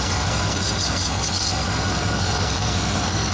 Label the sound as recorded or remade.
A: remade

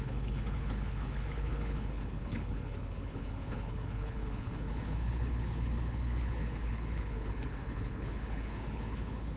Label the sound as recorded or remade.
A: remade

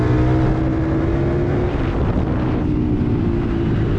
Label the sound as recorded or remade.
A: recorded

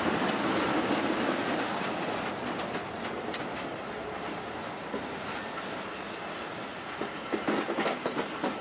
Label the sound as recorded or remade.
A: recorded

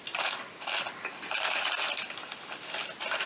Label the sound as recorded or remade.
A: recorded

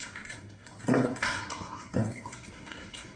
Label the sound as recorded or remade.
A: remade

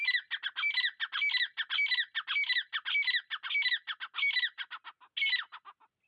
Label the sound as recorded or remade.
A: recorded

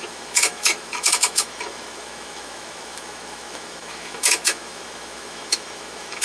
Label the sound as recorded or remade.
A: remade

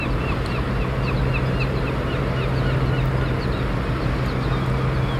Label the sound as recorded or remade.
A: recorded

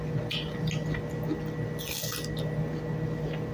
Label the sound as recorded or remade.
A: recorded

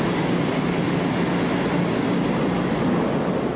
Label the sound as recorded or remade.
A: recorded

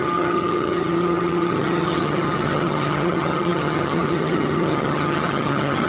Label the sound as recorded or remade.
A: remade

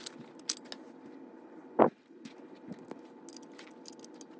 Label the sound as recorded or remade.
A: recorded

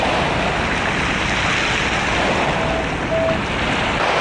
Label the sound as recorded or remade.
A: recorded